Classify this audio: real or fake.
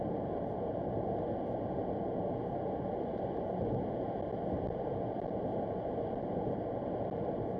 real